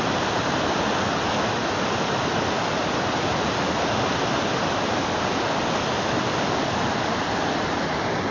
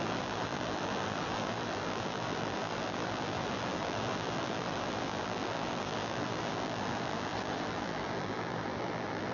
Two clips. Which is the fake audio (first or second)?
second